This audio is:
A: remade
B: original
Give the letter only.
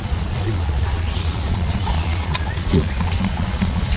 A